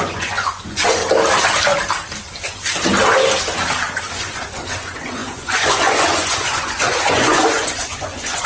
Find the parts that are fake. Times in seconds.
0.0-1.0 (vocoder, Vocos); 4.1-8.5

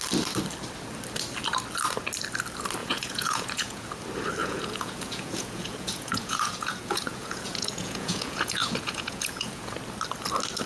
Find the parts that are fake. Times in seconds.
2.8-3.9 (vocoder, Vocos); 4.4-9.7

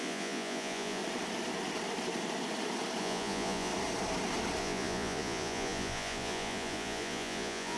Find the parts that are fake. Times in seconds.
0.0-1.0 (vocoder, Vocos); 3.0-3.7; 4.6-7.8

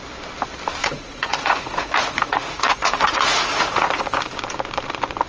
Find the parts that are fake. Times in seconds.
0.8-4.0 (vocoder, Vocos)